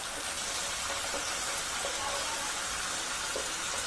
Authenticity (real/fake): real